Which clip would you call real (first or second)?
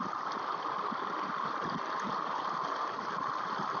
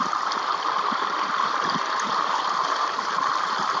first